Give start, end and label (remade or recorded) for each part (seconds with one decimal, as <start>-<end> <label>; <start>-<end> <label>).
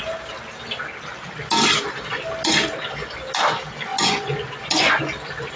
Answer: 0.0-3.9 recorded; 3.9-5.0 remade; 5.0-5.6 recorded